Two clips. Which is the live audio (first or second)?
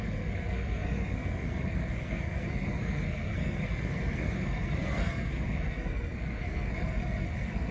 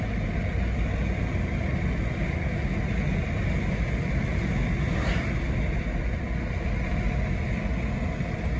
second